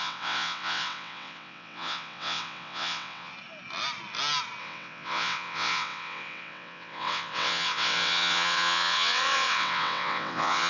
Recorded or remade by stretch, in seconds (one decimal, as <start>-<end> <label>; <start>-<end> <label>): 0.0-3.3 remade; 3.3-4.6 recorded; 4.6-10.7 remade